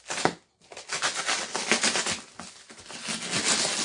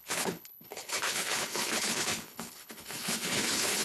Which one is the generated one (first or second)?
second